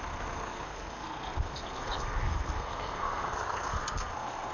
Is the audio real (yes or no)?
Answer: no